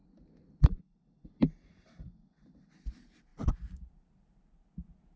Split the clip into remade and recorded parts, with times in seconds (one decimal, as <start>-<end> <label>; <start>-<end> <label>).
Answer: 0.0-0.8 remade; 0.8-3.3 recorded; 3.3-4.4 remade; 4.4-5.2 recorded